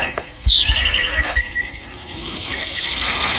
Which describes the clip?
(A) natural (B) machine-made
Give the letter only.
B